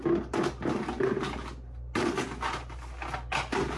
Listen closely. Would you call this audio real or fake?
real